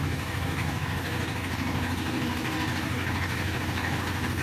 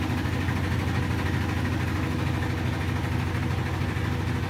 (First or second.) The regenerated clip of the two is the first